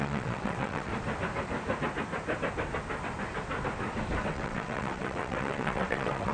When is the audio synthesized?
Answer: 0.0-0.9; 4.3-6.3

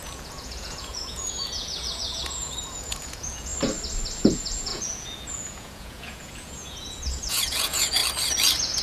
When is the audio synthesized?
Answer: 0.0-3.5; 4.2-8.0

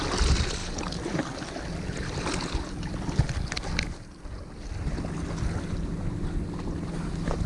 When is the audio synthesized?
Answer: 0.6-1.3

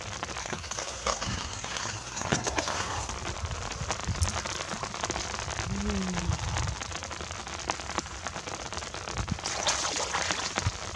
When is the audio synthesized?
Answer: 0.4-3.1

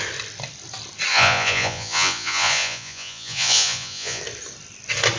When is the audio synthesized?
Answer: 1.1-4.2

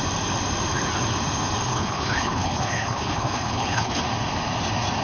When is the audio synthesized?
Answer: 1.7-4.0

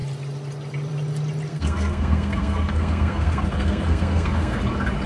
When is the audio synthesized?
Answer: 1.5-4.6

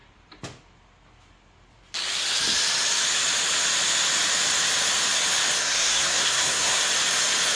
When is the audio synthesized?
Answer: 5.6-6.8